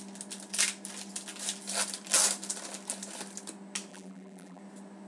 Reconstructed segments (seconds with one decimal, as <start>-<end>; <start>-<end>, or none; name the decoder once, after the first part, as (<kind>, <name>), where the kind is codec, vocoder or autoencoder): 3.9-4.6 (vocoder, BigVGAN v2)